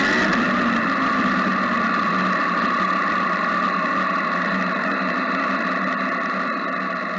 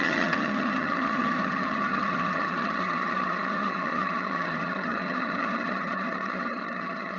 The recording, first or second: first